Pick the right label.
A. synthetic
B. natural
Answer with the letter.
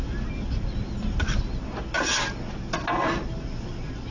B